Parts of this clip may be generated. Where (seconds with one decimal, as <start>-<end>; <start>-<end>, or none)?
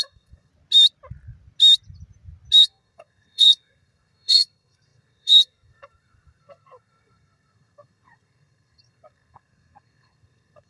0.0-0.5; 2.6-10.7